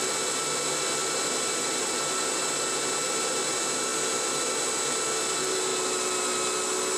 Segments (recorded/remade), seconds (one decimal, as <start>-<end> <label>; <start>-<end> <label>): 0.0-1.0 recorded; 1.0-2.4 remade; 2.4-5.7 recorded; 5.7-6.4 remade; 6.4-7.0 recorded